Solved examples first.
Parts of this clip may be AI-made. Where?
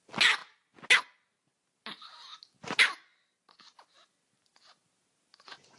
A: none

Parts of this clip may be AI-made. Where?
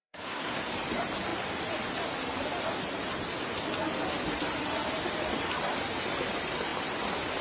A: 0.0-0.6 (codec, SNAC)